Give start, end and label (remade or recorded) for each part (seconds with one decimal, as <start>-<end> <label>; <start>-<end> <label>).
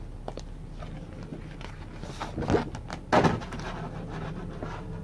0.0-5.0 recorded